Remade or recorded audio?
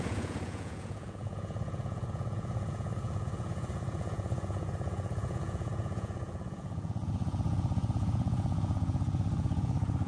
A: remade